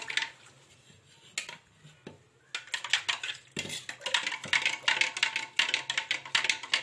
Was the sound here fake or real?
real